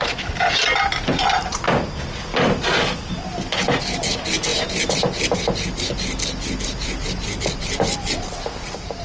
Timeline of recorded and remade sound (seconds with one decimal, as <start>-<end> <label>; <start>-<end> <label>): 0.0-9.0 recorded